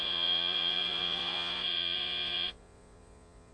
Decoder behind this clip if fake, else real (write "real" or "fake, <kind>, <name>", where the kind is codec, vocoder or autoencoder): fake, vocoder, Vocos